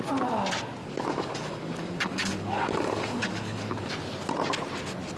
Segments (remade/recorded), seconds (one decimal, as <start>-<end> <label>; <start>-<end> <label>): 0.0-0.8 recorded; 0.8-3.9 remade; 3.9-5.2 recorded